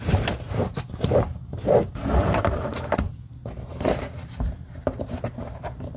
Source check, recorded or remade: remade